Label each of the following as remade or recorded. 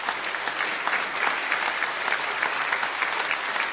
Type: recorded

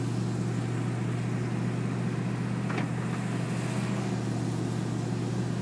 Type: recorded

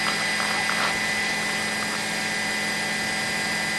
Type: recorded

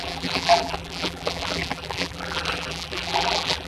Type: remade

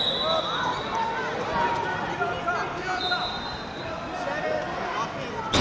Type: recorded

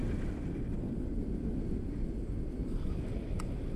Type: recorded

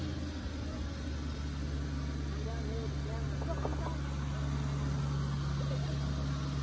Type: recorded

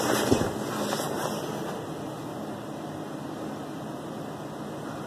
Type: recorded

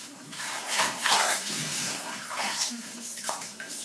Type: remade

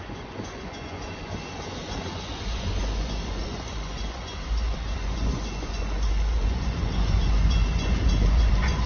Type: remade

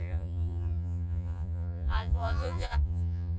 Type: remade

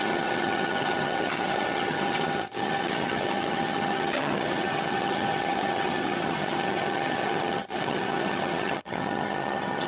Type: remade